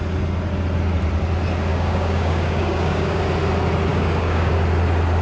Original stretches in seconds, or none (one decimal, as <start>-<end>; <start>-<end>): 0.0-1.7; 3.2-3.9; 4.5-5.2